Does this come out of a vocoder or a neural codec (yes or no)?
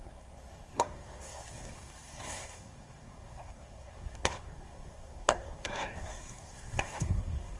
yes